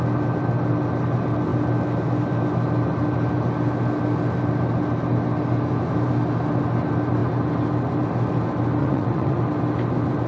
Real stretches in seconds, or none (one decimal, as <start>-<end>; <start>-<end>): 0.0-8.8; 9.4-10.3